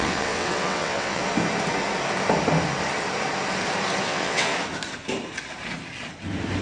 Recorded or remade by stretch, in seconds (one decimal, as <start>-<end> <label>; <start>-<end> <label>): 0.0-1.2 remade; 1.2-4.0 recorded; 4.0-4.5 remade; 4.5-6.6 recorded